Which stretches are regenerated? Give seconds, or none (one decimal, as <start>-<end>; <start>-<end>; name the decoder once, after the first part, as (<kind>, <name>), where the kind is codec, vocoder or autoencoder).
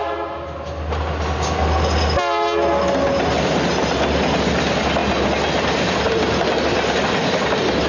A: none